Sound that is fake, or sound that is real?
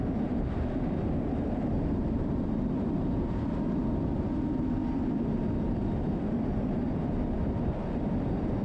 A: real